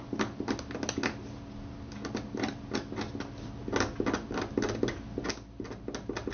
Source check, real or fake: real